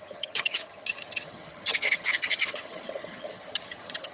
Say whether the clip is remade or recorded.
remade